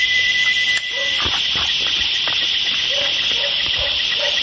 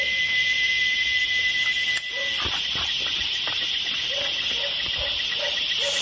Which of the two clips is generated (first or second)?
first